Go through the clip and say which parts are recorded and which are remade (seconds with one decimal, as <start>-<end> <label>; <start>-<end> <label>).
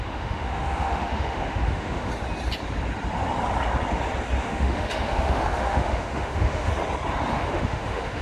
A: 0.0-2.1 remade; 2.1-4.4 recorded; 4.4-6.7 remade; 6.7-7.3 recorded; 7.3-8.2 remade